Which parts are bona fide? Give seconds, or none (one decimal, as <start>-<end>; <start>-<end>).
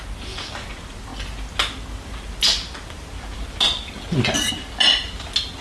0.0-5.6